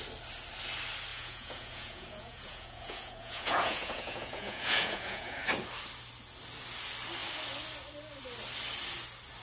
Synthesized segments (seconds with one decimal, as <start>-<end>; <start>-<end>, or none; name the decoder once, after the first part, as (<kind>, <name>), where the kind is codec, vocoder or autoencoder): 1.1-5.4 (vocoder, Vocos)